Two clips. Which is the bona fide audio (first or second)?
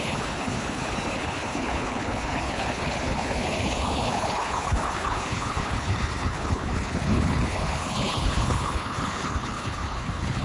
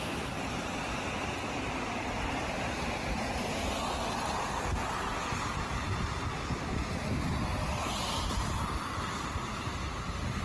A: second